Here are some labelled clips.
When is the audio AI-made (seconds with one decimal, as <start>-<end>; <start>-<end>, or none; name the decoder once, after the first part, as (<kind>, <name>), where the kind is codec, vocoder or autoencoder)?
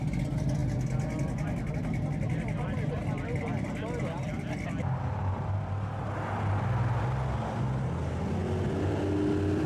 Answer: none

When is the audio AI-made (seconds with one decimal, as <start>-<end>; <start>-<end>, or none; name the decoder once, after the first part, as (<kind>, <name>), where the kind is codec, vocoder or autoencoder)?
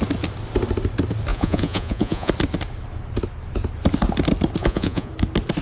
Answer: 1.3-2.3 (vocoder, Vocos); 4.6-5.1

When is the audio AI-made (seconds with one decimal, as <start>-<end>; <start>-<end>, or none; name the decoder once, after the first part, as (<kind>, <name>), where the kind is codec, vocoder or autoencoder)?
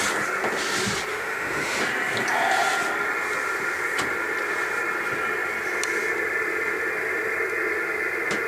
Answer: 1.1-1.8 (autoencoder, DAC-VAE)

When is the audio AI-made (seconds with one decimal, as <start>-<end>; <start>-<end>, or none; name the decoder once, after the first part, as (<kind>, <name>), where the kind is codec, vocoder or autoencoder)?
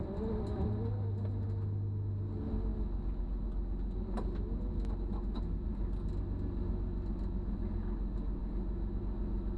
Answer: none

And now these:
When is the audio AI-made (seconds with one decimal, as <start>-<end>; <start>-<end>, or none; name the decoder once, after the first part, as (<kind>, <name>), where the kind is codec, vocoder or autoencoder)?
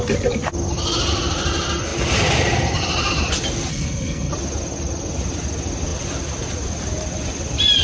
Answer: 3.7-4.3 (codec, SNAC)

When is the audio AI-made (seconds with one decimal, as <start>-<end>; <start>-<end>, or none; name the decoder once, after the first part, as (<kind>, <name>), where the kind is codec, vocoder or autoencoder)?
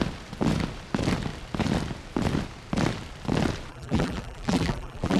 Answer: 3.7-5.2 (vocoder, BigVGAN v2)